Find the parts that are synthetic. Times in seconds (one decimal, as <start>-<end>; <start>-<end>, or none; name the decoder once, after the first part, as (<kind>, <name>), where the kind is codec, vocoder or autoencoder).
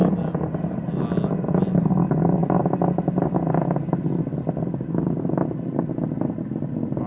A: none